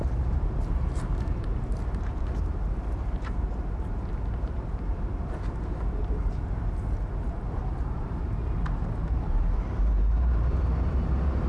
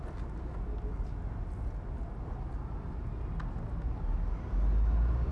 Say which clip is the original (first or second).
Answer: second